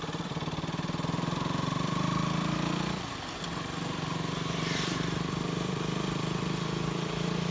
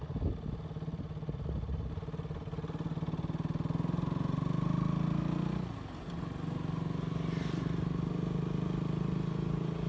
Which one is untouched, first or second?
second